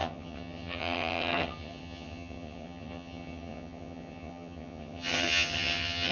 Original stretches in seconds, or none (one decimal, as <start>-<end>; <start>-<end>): none